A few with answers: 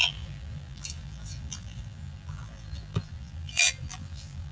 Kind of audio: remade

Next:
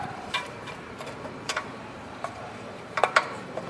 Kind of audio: remade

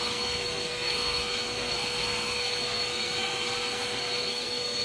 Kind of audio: remade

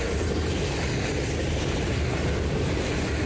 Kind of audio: recorded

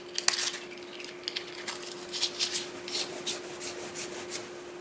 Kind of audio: recorded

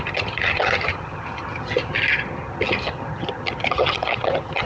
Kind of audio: remade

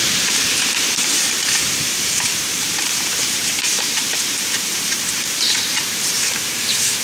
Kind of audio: remade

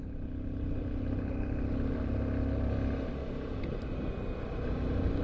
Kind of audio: recorded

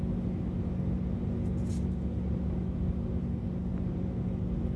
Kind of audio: recorded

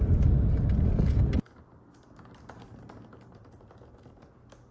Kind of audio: recorded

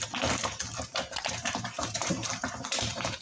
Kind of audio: remade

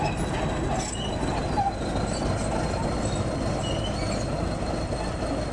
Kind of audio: recorded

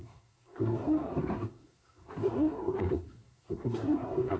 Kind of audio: remade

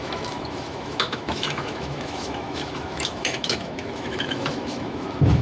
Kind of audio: remade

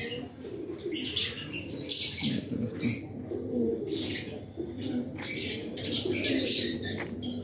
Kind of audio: recorded